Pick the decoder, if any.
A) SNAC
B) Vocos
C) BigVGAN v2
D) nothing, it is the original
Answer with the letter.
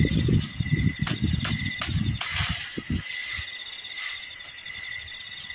D